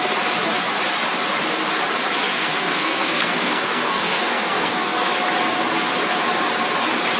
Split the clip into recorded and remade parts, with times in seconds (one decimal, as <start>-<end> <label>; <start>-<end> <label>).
0.0-2.2 recorded; 2.2-5.1 remade; 5.1-7.2 recorded